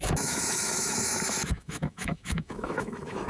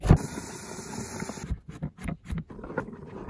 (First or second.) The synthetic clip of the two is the first